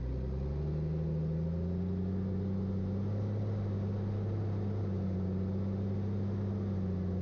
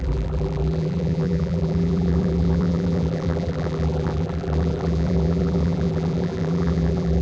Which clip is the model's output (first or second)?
second